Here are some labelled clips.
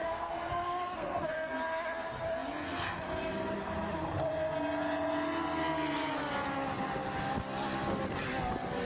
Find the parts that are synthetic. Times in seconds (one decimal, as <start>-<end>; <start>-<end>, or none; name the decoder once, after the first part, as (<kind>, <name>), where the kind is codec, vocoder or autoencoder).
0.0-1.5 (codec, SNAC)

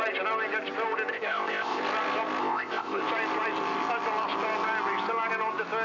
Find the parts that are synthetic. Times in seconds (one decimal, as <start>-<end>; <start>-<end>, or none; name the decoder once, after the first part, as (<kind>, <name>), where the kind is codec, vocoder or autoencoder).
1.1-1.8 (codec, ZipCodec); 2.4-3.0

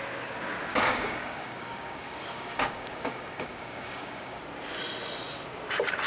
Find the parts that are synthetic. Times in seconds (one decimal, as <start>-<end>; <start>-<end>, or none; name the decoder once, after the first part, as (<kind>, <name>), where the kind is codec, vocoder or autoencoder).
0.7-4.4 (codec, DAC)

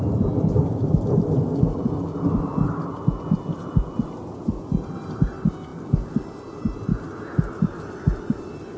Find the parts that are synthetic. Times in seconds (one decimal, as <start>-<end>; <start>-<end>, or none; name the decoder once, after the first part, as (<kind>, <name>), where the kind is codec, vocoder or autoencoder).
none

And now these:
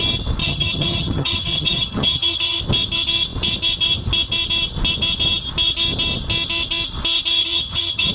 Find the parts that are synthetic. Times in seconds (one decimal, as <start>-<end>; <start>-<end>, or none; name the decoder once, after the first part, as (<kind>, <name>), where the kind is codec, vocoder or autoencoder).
0.4-2.6 (vocoder, HiFi-GAN); 7.4-8.1